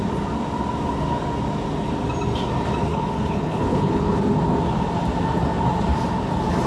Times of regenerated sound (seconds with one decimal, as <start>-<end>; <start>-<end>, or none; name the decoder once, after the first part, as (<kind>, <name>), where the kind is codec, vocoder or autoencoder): 2.9-4.2 (codec, HILCodec)